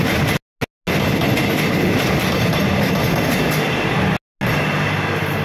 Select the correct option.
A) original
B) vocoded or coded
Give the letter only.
A